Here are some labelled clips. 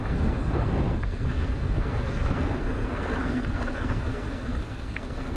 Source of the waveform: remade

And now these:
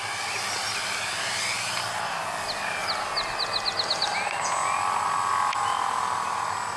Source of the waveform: recorded